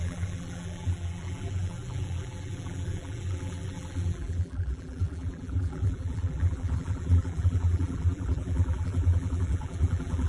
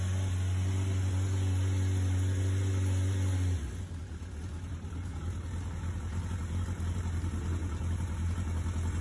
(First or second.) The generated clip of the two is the first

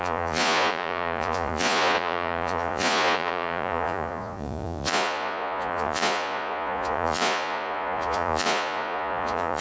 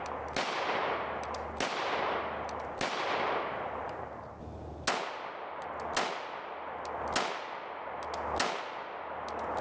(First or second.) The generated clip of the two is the first